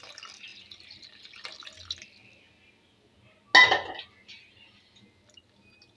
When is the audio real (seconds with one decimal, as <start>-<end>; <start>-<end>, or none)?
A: 0.0-6.0